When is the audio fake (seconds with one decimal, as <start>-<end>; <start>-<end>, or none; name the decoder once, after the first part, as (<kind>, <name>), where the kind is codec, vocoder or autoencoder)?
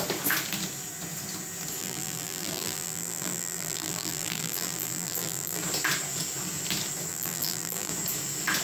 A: 1.8-5.6 (vocoder, BigVGAN v2); 7.1-7.9